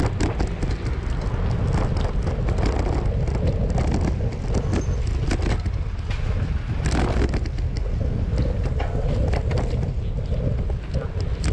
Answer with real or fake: real